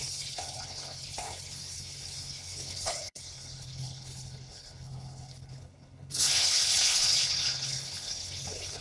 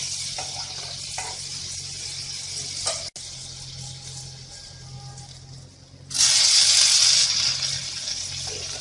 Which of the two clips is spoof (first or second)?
first